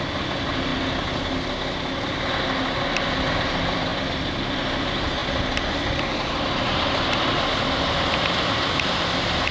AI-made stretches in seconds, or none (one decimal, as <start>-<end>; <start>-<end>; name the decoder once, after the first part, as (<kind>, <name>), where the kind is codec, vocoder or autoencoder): none

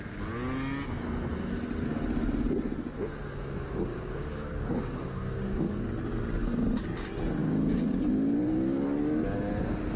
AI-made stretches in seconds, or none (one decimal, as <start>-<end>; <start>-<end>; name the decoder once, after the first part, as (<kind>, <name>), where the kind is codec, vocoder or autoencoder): 3.9-5.7 (codec, DAC); 7.4-8.0

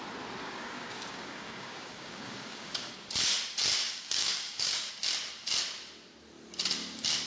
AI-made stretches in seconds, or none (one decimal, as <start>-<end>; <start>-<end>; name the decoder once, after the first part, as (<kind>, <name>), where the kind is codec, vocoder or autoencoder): 0.4-3.1 (codec, DAC); 3.8-4.9

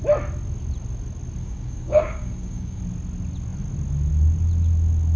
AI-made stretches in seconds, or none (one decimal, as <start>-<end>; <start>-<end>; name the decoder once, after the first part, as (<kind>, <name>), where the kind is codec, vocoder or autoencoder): 1.4-2.8 (codec, DAC)

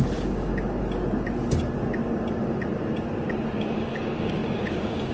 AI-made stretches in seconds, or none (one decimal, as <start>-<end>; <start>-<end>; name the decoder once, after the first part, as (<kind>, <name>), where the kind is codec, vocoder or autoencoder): 0.0-0.5 (codec, DAC); 3.6-5.1